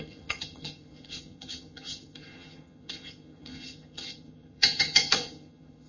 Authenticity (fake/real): fake